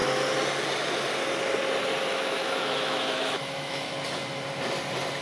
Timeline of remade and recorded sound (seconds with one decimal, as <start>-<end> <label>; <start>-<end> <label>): 0.0-2.1 recorded; 2.1-3.9 remade; 3.9-5.2 recorded